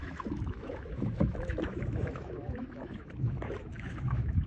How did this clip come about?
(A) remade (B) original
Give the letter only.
A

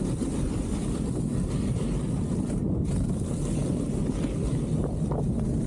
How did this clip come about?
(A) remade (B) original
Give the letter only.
B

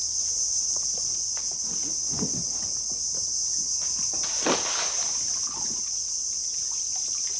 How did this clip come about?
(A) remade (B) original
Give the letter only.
B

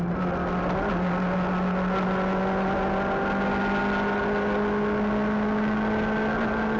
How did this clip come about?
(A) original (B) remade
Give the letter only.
A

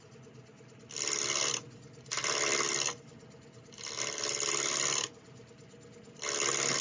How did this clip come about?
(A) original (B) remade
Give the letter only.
A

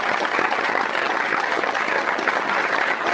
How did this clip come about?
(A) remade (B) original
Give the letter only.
A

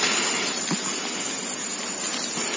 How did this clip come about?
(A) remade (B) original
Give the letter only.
B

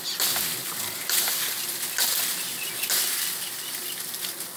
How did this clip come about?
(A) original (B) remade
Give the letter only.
A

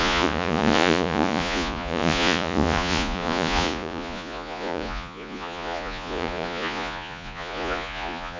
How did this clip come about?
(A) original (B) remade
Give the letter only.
B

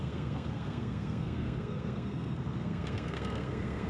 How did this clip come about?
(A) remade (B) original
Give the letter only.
A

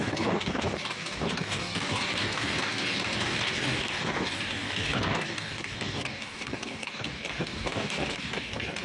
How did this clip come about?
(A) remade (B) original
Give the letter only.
A